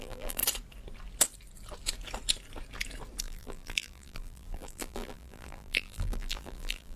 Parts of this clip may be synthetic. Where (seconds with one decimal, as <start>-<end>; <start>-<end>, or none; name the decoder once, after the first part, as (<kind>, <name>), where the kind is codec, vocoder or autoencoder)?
0.0-0.4 (vocoder, BigVGAN v2); 3.2-7.0